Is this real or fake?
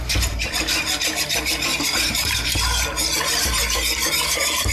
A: fake